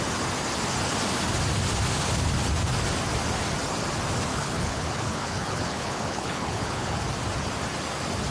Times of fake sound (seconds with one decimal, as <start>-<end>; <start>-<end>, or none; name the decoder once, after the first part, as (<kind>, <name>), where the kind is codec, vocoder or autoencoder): 4.3-7.0 (codec, HILCodec)